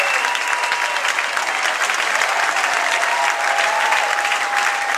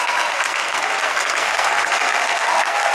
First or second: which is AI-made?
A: second